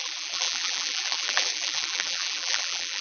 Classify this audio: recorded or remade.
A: remade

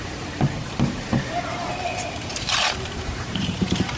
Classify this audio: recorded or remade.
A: remade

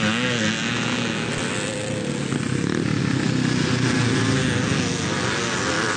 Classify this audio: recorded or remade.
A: recorded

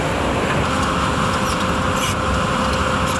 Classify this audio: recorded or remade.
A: recorded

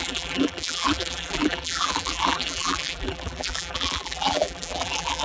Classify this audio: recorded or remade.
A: remade